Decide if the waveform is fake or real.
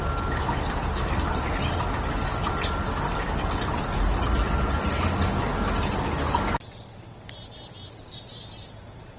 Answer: real